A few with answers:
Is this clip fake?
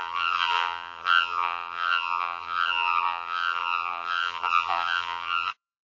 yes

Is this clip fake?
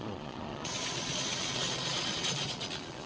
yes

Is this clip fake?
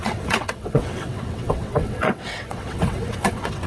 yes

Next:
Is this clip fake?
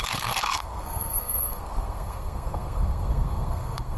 yes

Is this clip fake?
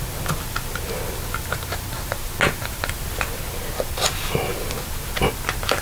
no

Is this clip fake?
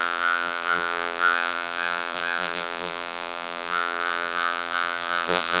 yes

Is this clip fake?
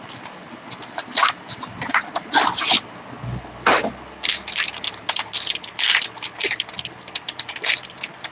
no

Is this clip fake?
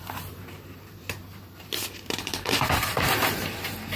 yes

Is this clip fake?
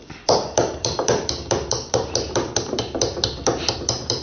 yes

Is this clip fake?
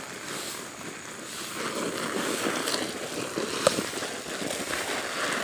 no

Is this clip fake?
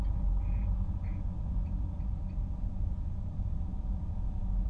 yes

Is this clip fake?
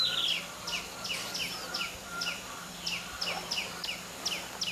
no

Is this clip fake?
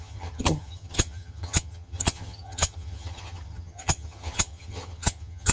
yes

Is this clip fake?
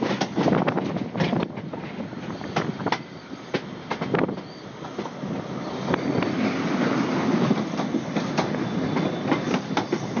no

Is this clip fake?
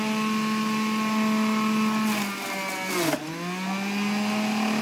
no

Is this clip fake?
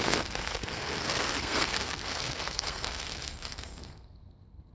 yes